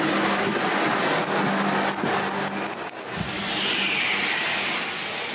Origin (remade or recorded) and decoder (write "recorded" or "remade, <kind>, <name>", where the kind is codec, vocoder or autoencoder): recorded